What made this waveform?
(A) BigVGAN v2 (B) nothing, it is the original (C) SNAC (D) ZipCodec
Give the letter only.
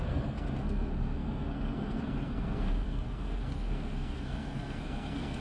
C